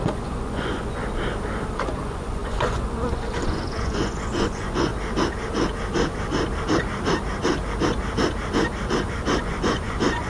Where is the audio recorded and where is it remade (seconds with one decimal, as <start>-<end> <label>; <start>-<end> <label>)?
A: 0.0-1.0 remade; 1.0-1.8 recorded; 1.8-4.9 remade; 4.9-9.1 recorded; 9.1-10.3 remade